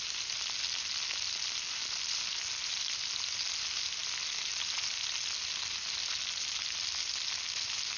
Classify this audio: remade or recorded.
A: recorded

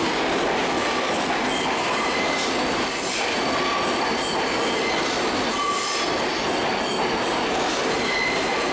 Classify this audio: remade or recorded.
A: recorded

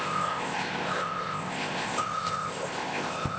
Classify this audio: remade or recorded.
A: remade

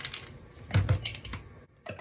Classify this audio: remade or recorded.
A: recorded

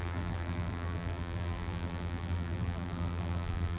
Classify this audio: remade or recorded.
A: remade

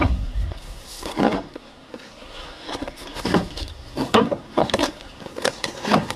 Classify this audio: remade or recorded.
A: remade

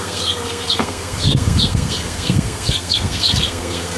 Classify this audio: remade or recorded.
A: remade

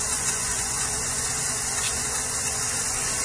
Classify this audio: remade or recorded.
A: remade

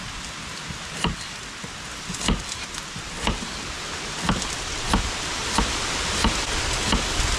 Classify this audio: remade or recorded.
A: recorded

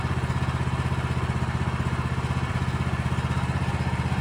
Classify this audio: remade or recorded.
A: recorded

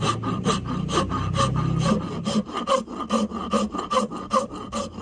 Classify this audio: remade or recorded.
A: recorded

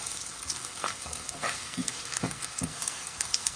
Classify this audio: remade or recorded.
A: remade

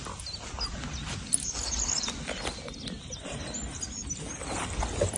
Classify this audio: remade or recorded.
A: recorded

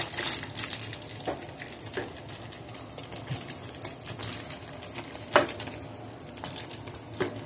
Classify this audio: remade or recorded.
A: recorded